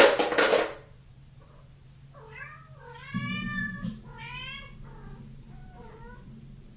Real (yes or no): yes